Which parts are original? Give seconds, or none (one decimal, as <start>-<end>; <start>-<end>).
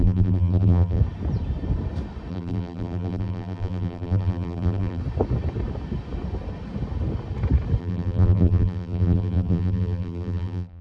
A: 1.0-2.3; 5.0-7.8